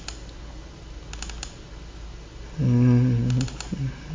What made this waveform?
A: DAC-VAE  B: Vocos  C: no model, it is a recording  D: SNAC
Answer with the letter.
C